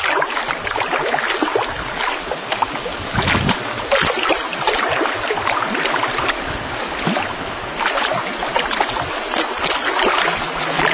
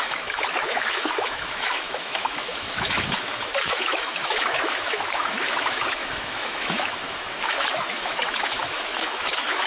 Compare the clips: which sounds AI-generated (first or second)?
second